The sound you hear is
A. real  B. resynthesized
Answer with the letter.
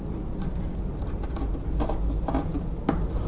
A